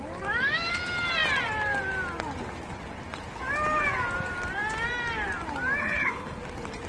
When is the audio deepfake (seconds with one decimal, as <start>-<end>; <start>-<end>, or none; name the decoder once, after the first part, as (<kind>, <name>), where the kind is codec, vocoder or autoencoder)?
5.8-6.4 (codec, HILCodec)